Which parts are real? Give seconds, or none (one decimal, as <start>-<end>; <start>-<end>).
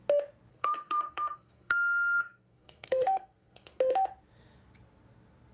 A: 0.0-0.5; 3.8-5.5